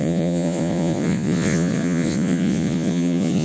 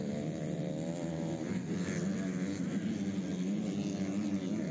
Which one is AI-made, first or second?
first